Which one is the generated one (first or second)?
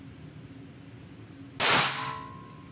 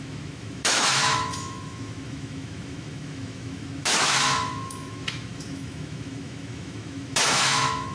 second